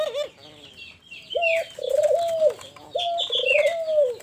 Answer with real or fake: real